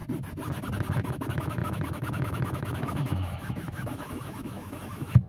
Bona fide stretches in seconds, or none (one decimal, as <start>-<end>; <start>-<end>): 0.0-1.1